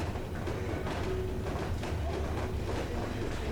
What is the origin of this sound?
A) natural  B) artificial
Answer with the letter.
A